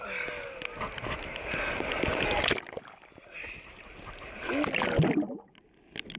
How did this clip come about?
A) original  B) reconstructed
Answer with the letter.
A